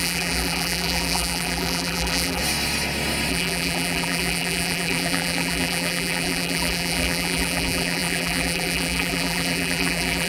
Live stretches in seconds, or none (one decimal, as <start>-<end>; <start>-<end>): 2.4-3.3